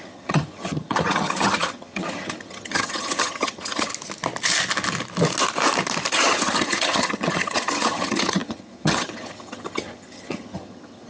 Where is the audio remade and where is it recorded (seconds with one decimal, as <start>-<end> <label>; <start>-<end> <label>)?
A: 0.0-3.9 remade; 3.9-6.1 recorded; 6.1-11.1 remade